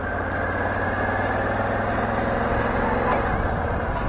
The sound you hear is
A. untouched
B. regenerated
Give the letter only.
A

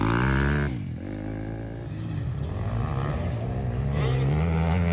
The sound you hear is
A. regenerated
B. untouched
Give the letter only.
B